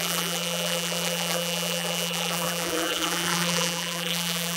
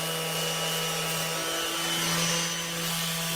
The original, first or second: second